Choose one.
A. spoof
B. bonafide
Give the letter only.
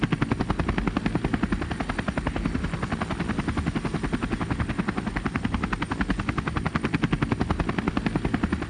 B